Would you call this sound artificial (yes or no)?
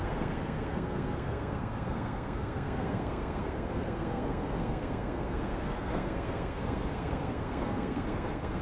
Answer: yes